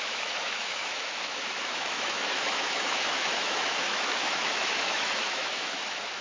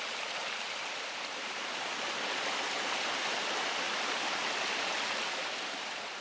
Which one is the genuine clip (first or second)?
second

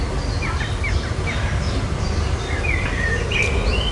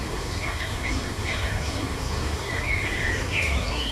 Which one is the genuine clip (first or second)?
first